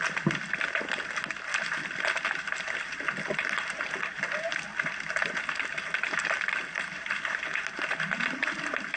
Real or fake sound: real